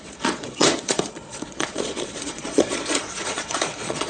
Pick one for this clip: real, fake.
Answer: fake